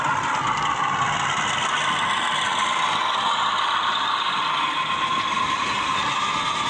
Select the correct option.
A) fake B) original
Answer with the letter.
B